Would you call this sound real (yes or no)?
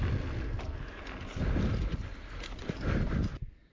yes